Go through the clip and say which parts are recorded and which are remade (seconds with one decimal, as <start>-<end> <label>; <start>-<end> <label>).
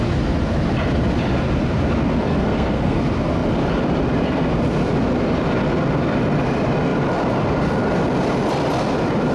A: 0.0-2.3 recorded; 2.3-3.0 remade; 3.0-9.3 recorded